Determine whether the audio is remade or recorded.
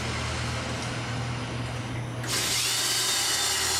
recorded